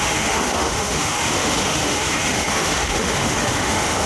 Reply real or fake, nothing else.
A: fake